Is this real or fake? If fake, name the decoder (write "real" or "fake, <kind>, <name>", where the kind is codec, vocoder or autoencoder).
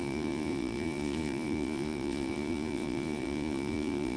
fake, vocoder, Vocos